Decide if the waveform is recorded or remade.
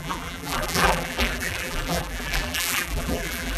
remade